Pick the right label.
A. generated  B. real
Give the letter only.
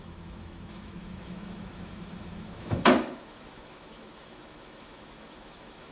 A